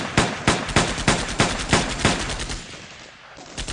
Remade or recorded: recorded